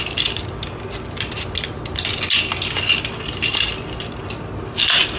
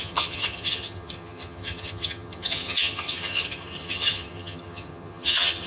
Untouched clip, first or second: first